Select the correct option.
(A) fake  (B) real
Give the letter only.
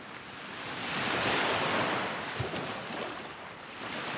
B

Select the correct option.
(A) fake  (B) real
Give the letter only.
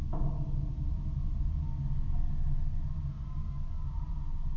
B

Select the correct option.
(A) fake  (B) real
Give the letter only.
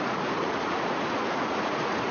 A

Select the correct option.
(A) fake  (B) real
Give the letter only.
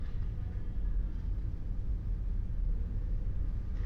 B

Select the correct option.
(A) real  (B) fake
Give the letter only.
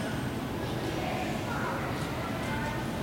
A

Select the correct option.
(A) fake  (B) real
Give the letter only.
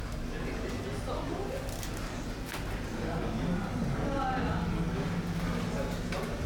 B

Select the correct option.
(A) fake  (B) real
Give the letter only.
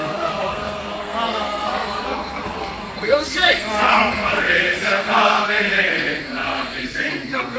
A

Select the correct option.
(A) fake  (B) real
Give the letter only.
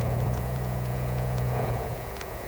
A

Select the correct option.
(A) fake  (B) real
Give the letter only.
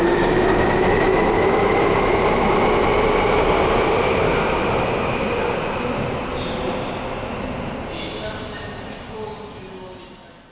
B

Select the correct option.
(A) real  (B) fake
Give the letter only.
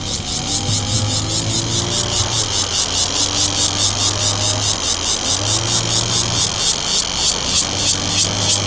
A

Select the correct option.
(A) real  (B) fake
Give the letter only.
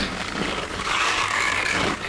B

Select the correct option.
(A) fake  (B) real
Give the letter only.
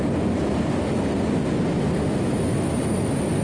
B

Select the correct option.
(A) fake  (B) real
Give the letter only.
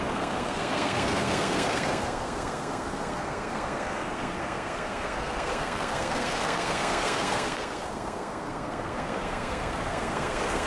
A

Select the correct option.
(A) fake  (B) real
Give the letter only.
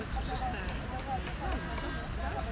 B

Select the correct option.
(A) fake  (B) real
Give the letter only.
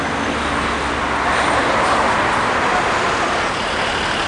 B